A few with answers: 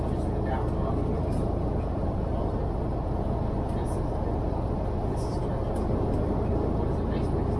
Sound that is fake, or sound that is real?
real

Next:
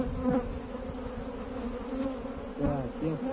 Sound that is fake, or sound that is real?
real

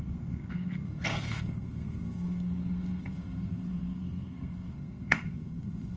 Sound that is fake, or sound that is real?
fake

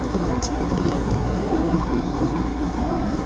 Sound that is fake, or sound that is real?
fake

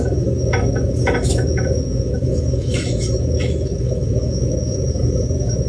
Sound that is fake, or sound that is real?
fake